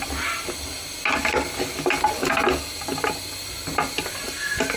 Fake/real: real